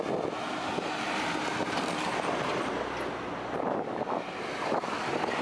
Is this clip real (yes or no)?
yes